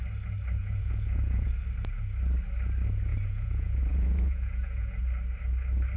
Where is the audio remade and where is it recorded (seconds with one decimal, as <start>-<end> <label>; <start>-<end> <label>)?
0.0-0.6 recorded; 0.6-1.5 remade; 1.5-3.1 recorded; 3.1-5.0 remade; 5.0-6.0 recorded